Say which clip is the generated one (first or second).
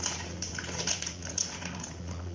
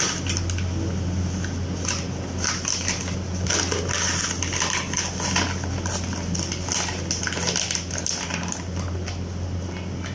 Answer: first